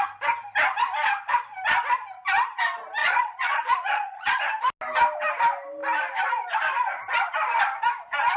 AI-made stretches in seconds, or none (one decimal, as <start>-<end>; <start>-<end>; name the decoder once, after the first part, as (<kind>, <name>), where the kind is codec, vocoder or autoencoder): 3.0-4.4 (vocoder, Vocos)